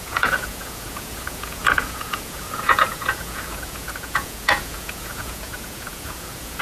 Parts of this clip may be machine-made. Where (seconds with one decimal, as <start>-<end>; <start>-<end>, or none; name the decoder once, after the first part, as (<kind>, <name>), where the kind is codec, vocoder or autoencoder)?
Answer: 0.0-6.6 (vocoder, Vocos)